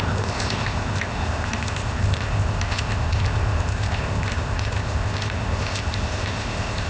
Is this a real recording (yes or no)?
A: no